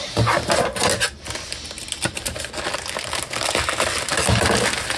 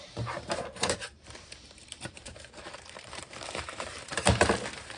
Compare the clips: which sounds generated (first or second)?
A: second